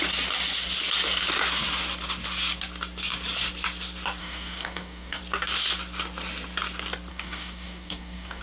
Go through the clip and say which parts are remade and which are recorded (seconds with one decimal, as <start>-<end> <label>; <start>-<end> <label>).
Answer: 0.0-4.2 recorded; 4.2-5.2 remade; 5.2-7.1 recorded; 7.1-8.4 remade